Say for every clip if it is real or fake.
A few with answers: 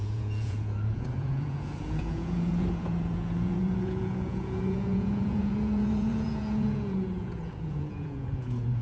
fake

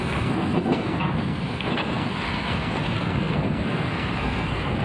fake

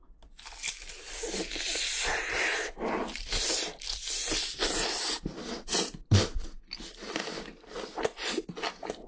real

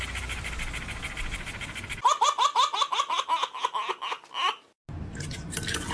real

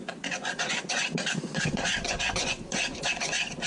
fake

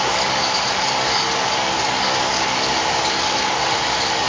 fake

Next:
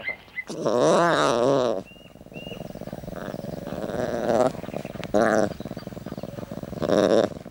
real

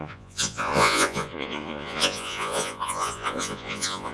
fake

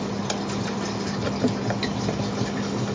real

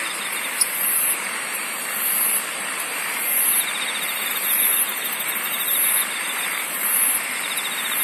fake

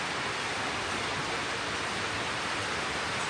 real